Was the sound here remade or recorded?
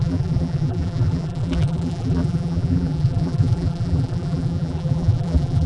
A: remade